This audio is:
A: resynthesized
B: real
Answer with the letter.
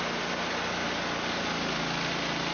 B